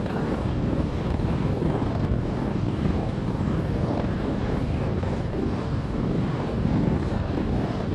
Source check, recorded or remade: remade